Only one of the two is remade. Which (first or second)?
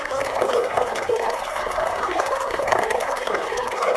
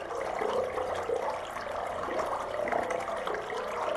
first